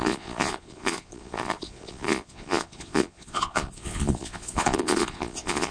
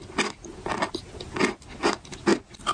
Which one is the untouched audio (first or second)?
second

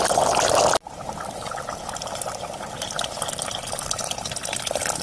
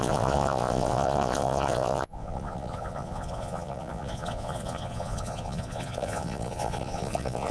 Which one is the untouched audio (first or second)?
first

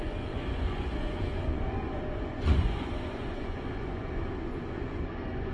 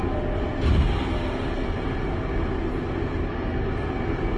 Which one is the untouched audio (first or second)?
second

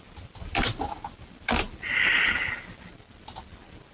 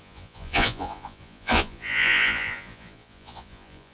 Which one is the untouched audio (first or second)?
first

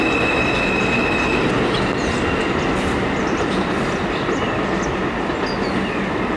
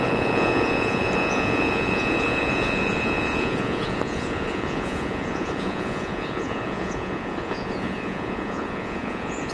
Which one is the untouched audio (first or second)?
first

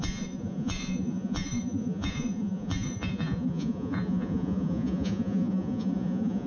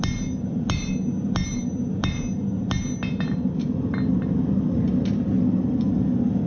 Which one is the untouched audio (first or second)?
second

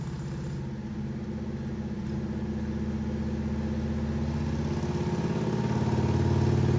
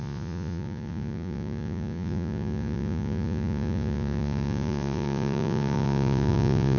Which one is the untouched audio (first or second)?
first